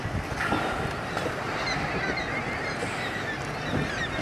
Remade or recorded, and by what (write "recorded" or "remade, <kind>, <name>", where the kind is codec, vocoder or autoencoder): recorded